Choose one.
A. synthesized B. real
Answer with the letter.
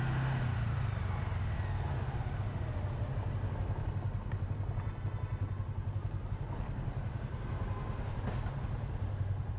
B